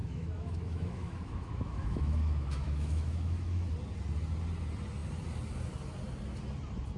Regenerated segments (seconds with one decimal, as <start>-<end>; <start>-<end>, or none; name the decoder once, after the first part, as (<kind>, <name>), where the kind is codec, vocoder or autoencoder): 0.0-3.7 (autoencoder, DAC-VAE)

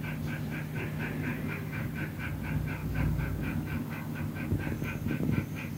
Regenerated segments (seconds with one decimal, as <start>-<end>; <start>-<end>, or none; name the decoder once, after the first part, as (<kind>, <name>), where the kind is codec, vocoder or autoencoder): 1.3-1.9 (codec, DAC); 2.8-4.2